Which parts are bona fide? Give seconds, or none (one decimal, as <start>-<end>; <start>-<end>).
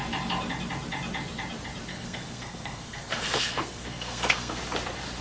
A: 0.0-1.9; 4.6-5.2